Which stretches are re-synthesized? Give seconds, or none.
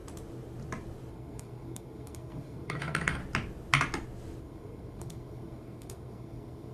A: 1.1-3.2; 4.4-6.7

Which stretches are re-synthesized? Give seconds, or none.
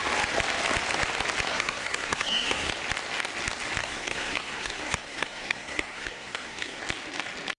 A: 1.5-2.7; 3.8-6.8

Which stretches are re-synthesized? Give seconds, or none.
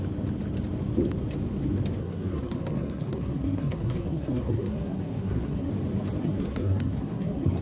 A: 2.0-5.7; 6.2-7.6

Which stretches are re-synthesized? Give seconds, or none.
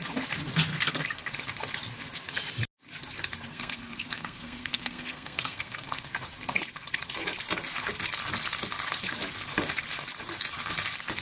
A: 0.7-1.3; 3.5-6.1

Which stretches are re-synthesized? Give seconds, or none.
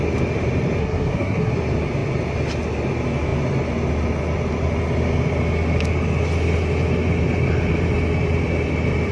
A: 0.8-1.5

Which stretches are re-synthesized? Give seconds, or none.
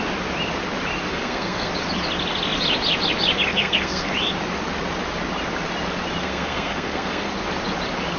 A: 1.1-1.7; 3.5-4.1; 6.2-7.3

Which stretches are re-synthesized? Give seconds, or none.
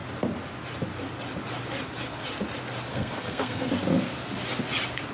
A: 2.9-3.7